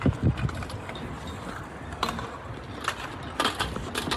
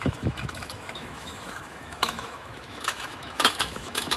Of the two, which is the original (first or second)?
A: first